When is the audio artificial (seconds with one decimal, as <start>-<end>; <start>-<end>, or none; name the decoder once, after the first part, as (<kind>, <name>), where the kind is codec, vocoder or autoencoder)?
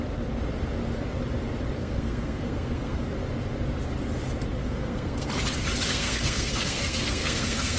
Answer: 1.8-3.0 (codec, SNAC); 4.6-5.3; 5.9-7.8